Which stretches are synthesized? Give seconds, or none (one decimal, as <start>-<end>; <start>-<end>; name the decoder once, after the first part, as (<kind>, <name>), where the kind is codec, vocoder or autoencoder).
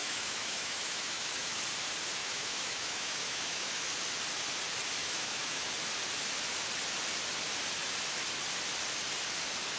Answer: 0.0-1.6 (autoencoder, DAC-VAE); 2.2-3.7; 5.0-5.7